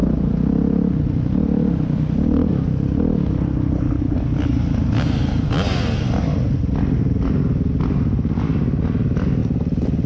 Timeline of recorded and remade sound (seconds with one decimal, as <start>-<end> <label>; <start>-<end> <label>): 0.0-10.1 recorded